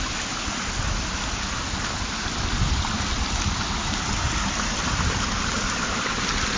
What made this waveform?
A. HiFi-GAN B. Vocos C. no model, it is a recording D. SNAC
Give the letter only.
C